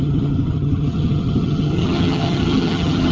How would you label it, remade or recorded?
remade